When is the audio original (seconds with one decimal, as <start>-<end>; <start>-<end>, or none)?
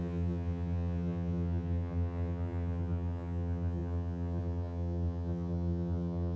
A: none